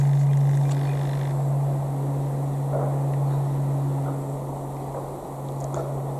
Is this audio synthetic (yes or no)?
no